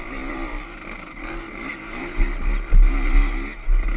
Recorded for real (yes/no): yes